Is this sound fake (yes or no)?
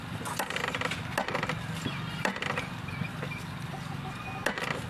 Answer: no